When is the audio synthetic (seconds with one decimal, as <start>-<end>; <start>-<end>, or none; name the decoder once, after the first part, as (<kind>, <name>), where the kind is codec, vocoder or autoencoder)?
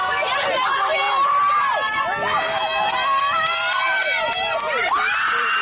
0.9-1.5 (vocoder, BigVGAN v2); 2.2-5.6